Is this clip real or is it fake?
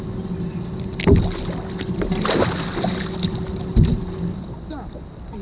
real